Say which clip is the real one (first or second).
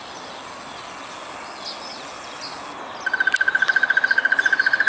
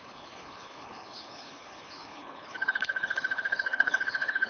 first